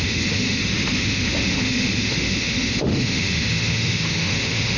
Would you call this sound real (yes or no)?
no